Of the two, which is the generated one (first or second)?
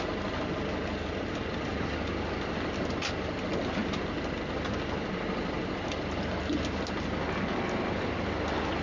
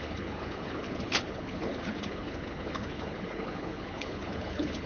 second